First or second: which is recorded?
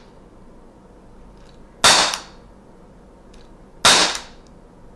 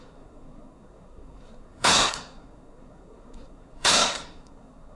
first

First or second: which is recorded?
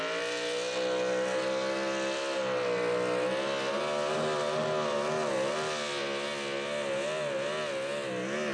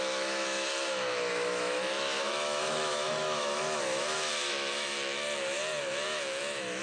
first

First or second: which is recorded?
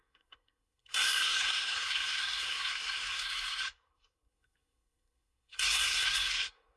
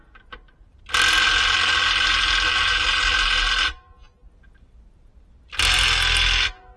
second